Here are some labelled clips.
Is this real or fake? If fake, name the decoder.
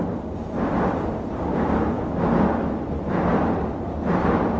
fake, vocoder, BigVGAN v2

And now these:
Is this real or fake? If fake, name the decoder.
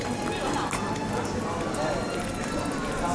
real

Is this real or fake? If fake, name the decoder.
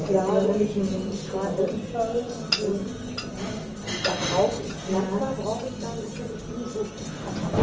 real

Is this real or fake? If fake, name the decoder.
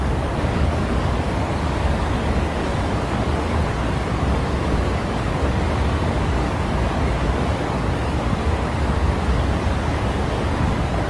fake, codec, DAC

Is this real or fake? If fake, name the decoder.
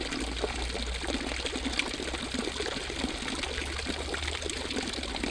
real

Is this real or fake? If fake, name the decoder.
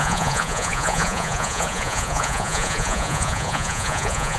fake, vocoder, Vocos